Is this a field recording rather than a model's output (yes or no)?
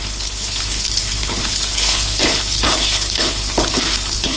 no